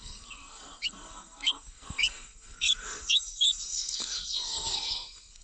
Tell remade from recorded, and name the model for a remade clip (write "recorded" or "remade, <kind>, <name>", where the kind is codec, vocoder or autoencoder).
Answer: remade, codec, SNAC